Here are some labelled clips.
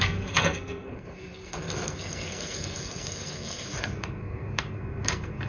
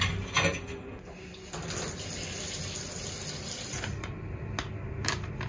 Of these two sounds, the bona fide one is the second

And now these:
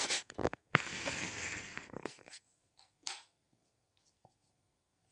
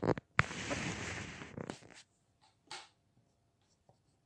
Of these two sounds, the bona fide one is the second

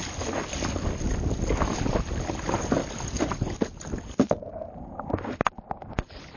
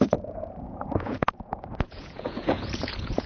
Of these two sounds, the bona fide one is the first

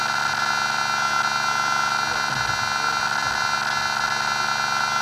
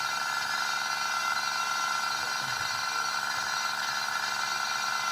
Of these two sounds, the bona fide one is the first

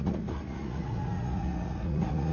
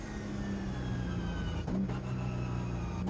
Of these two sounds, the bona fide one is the second